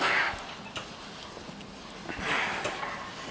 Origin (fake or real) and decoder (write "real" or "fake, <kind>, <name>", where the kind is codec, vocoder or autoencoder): real